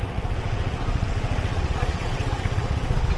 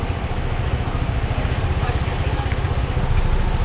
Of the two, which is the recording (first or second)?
second